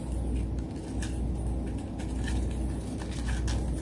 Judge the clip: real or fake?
real